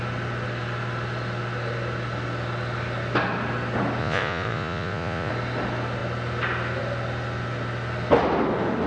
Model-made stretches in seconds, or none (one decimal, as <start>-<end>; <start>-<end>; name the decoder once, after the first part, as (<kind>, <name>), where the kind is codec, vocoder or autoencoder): 4.0-5.3 (vocoder, Vocos)